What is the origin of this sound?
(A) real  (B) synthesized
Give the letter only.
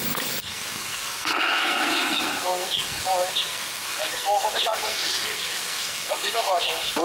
B